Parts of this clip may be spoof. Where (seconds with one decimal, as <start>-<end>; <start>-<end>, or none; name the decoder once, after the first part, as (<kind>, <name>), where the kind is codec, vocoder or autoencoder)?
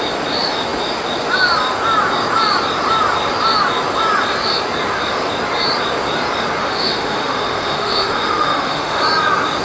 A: 6.6-9.0 (autoencoder, DAC-VAE)